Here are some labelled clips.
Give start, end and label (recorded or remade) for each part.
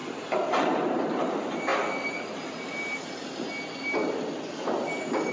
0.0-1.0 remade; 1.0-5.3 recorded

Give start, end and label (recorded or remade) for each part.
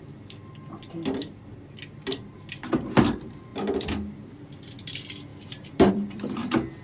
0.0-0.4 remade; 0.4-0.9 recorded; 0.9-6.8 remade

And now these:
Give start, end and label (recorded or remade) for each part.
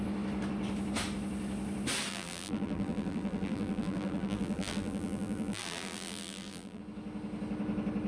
0.0-2.1 recorded; 2.1-6.8 remade; 6.8-8.1 recorded